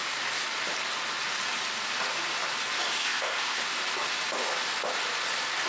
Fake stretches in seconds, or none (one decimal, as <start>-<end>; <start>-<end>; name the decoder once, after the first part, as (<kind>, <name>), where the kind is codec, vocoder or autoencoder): 3.0-3.6 (codec, ZipCodec)